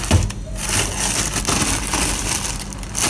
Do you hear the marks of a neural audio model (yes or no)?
no